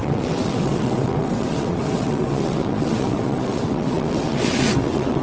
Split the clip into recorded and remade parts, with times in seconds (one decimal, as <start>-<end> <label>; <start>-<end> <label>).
0.0-5.2 remade